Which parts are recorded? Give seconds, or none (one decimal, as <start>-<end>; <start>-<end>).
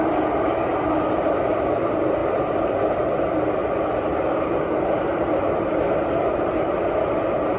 0.0-7.6